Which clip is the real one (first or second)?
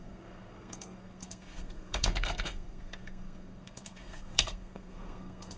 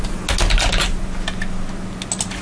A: second